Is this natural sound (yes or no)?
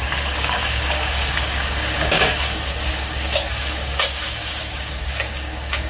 no